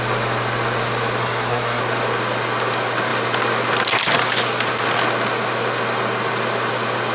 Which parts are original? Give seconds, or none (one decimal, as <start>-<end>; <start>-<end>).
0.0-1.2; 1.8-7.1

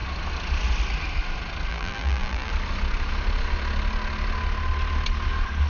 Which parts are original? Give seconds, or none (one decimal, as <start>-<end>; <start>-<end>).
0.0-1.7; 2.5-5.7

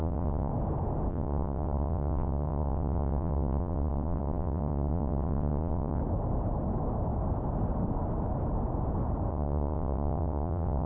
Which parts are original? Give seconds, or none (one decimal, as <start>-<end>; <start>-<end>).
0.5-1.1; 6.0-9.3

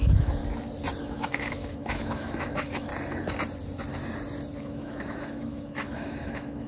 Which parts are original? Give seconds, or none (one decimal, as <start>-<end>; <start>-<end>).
0.4-1.0; 2.9-4.6

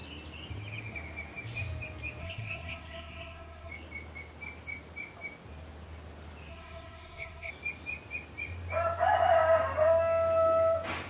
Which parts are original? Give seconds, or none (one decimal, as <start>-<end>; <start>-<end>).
0.0-2.2; 3.7-6.5; 7.5-11.1

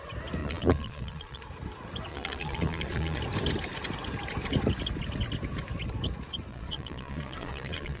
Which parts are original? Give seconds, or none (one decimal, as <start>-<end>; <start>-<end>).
0.0-0.4; 1.4-2.1; 3.2-6.5

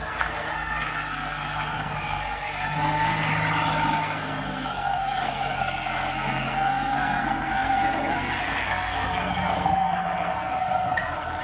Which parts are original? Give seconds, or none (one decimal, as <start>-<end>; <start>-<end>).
3.3-4.0